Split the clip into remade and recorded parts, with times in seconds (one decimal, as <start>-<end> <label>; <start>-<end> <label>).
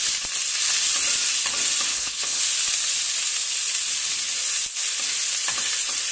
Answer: 0.0-1.9 recorded; 1.9-2.4 remade; 2.4-6.1 recorded